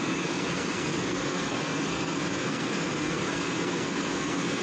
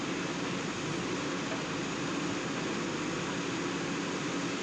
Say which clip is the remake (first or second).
first